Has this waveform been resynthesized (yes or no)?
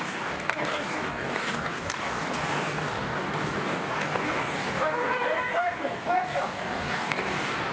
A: yes